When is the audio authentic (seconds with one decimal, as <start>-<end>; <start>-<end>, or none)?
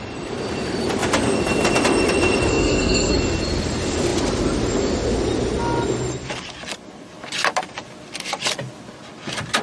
0.0-2.5; 3.1-9.6